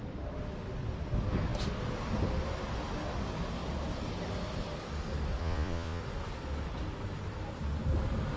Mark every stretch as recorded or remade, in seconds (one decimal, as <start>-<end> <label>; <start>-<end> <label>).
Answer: 0.0-5.4 recorded; 5.4-6.0 remade; 6.0-8.4 recorded